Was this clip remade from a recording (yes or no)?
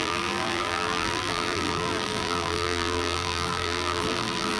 yes